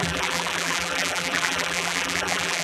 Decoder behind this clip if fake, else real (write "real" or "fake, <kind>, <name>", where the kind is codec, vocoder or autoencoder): fake, vocoder, BigVGAN v2